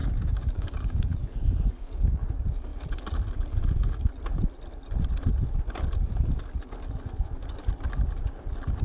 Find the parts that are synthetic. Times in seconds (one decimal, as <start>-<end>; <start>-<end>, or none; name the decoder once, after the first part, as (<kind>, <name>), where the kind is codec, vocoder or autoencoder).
0.0-2.3 (codec, DAC)